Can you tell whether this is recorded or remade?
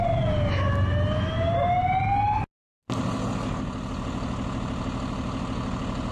recorded